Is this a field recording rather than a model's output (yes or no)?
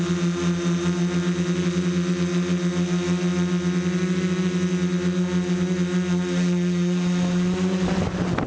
yes